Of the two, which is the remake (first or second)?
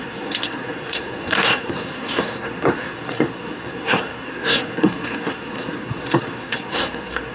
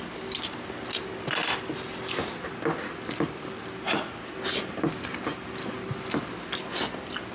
first